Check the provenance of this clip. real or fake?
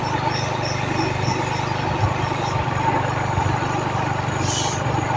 real